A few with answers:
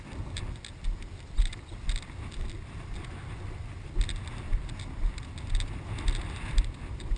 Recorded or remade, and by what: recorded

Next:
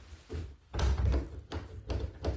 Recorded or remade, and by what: recorded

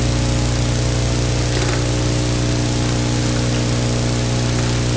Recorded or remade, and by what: recorded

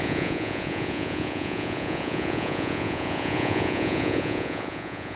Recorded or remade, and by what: remade, vocoder, Vocos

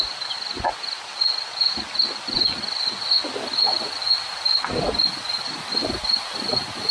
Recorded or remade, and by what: recorded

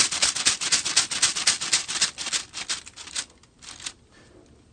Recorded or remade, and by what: recorded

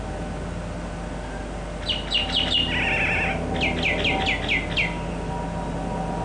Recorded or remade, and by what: recorded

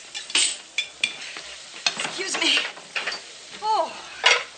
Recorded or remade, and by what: recorded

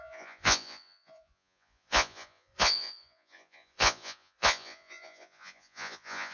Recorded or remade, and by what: remade, vocoder, Vocos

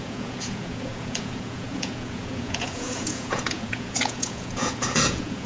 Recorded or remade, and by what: remade, vocoder, Vocos